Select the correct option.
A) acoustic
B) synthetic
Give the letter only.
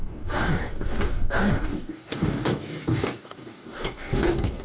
B